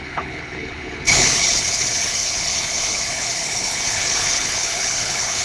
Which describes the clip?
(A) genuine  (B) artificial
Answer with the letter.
B